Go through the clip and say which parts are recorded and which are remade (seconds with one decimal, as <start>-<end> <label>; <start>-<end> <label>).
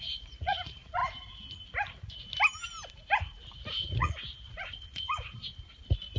0.0-1.0 remade; 1.0-3.9 recorded; 3.9-5.4 remade; 5.4-6.2 recorded